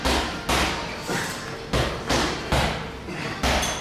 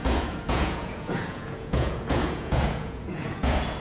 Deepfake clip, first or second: second